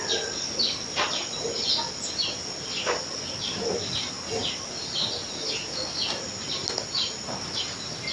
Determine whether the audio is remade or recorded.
recorded